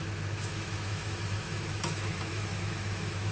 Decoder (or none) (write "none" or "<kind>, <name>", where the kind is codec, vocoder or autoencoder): autoencoder, DAC-VAE